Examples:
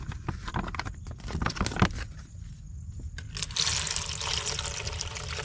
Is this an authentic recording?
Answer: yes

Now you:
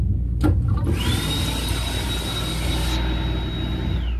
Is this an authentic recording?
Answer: yes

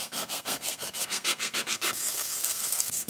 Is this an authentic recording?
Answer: no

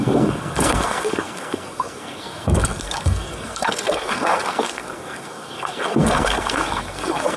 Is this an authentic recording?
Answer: no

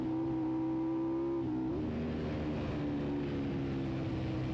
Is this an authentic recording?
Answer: yes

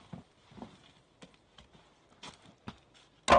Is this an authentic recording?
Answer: yes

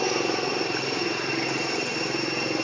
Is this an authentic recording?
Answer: yes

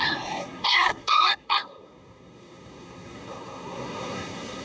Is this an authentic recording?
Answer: no